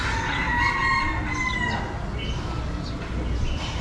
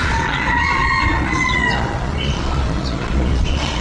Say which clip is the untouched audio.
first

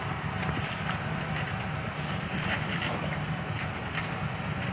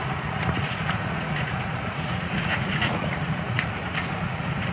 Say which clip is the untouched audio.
first